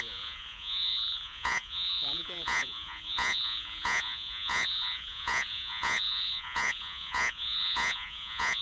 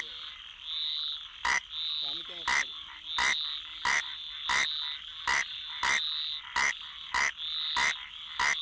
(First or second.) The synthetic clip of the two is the first